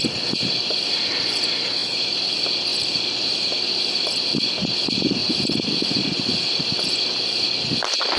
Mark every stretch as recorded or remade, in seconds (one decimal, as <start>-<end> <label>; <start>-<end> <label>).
0.0-1.8 recorded; 1.8-2.3 remade; 2.3-2.7 recorded; 2.7-4.1 remade; 4.1-8.2 recorded

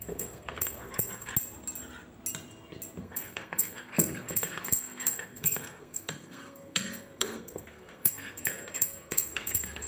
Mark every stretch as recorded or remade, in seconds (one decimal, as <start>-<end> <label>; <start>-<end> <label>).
0.0-1.3 remade; 1.3-3.0 recorded; 3.0-9.9 remade

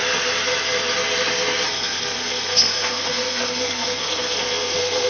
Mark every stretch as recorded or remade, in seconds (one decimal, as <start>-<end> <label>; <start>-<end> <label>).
0.0-1.7 recorded; 1.7-5.1 remade

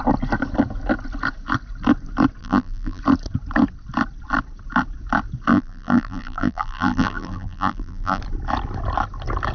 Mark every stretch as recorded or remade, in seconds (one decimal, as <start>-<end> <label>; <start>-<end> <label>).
0.0-2.4 recorded; 2.4-3.0 remade; 3.0-5.5 recorded; 5.5-8.2 remade; 8.2-9.5 recorded

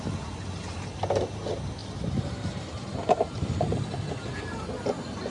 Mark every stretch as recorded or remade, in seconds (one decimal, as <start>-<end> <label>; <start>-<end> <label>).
0.0-5.3 recorded

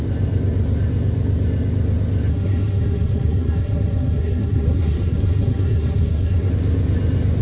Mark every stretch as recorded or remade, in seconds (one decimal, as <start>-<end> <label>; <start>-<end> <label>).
0.0-2.3 recorded; 2.3-6.5 remade; 6.5-7.4 recorded